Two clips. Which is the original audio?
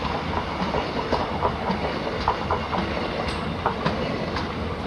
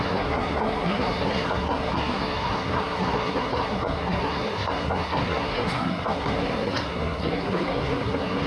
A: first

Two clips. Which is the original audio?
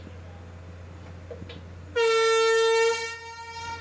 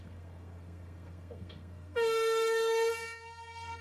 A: first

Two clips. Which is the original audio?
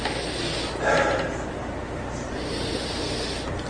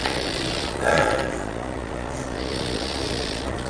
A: first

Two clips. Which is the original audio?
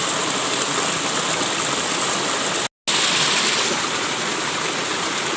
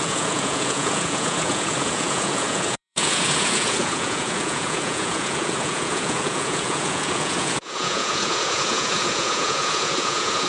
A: first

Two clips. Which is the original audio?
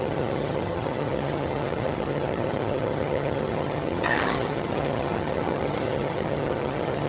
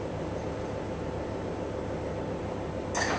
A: second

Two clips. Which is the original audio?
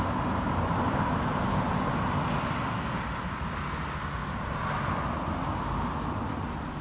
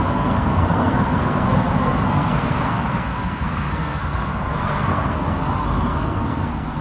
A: first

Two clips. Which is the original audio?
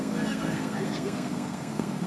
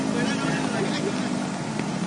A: second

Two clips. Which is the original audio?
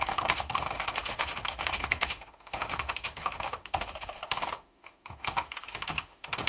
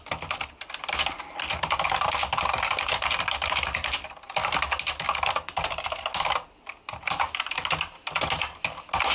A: second